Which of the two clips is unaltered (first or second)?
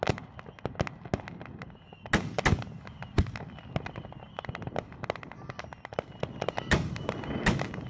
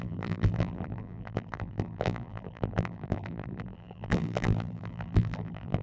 first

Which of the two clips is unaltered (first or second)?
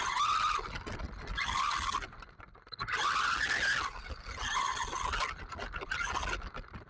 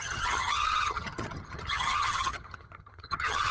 first